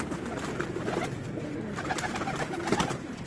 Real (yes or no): no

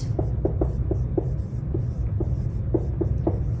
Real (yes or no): no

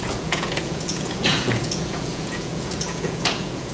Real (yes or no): no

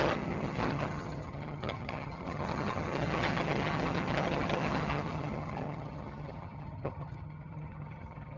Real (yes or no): no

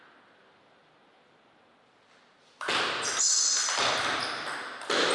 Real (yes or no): yes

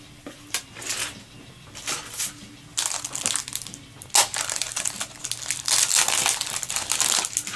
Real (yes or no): yes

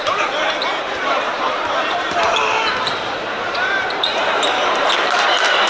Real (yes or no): no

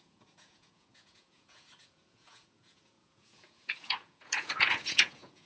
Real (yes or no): no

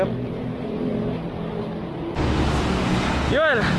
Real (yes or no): yes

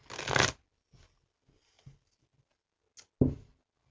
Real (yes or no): yes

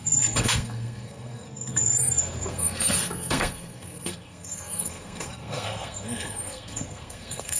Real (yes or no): no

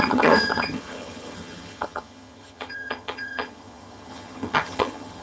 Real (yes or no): no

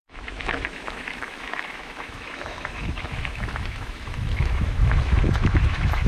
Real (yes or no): no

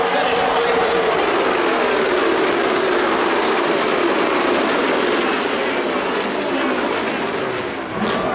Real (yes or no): yes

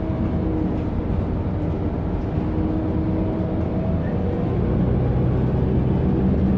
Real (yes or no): yes